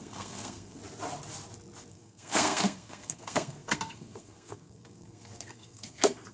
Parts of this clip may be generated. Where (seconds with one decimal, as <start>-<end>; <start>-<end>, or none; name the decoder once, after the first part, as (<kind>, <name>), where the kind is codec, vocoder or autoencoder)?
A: 0.0-0.8 (codec, SNAC); 1.9-6.3